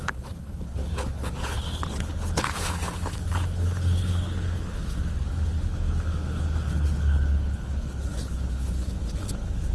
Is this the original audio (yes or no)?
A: no